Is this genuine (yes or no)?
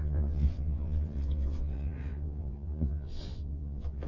no